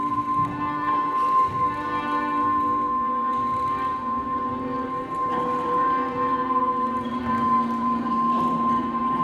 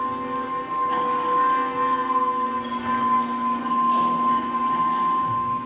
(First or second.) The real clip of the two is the second